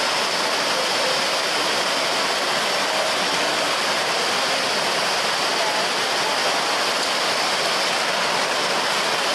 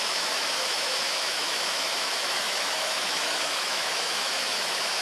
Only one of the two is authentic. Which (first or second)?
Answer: first